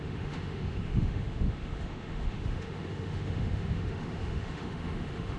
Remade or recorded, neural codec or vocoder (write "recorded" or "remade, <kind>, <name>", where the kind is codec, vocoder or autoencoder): remade, autoencoder, DAC-VAE